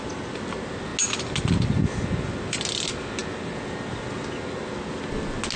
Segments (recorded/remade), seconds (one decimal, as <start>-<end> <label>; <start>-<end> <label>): 0.0-5.6 recorded